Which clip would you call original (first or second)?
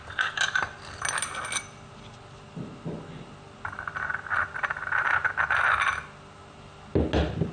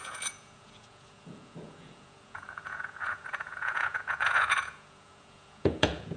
first